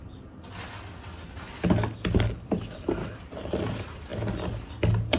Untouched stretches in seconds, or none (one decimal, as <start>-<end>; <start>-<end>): 0.0-5.2